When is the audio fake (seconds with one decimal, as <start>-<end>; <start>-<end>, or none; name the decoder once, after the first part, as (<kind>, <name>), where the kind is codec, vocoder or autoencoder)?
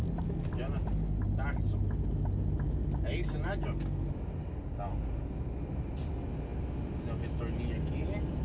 none